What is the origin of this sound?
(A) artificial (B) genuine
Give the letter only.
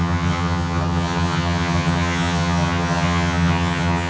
A